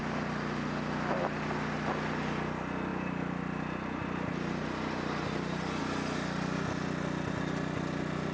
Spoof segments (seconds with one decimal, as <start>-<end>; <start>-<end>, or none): none